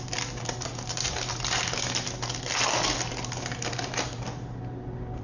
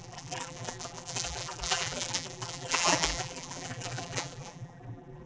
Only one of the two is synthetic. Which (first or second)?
second